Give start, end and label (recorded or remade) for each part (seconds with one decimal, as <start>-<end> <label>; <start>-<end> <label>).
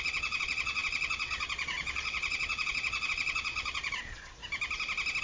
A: 0.0-4.4 remade; 4.4-5.2 recorded